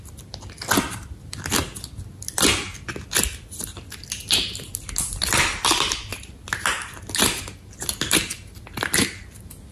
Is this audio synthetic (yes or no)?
no